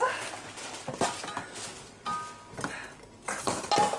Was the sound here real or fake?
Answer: real